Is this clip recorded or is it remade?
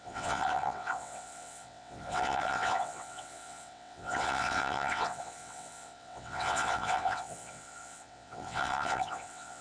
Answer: remade